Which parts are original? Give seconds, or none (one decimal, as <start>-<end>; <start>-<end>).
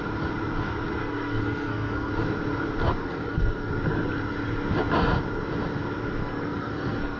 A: 0.0-1.0; 2.1-3.0; 3.7-6.2